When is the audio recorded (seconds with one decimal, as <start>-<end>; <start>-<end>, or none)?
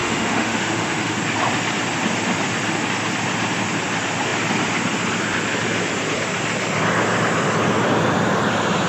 1.2-8.9